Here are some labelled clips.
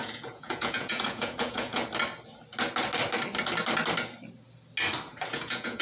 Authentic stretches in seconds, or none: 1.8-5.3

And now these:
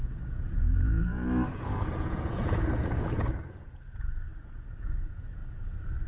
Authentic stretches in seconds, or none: 5.4-6.1

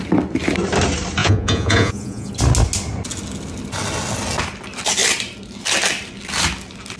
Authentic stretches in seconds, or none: 0.0-1.2; 2.3-7.0

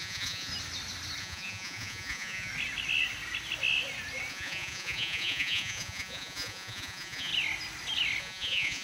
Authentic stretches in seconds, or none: 0.5-1.2; 2.5-4.3; 7.3-8.2

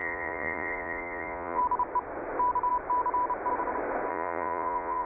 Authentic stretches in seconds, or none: 1.6-4.1